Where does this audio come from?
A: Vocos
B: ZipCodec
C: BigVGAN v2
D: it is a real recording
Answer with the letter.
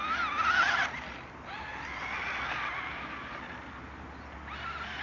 D